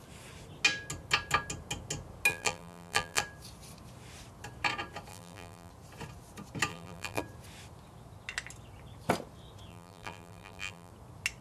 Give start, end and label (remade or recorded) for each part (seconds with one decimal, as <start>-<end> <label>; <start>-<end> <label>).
0.0-2.3 recorded; 2.3-3.2 remade; 3.2-5.1 recorded; 5.1-5.7 remade; 5.7-6.7 recorded; 6.7-7.2 remade; 7.2-9.7 recorded; 9.7-10.9 remade; 10.9-11.4 recorded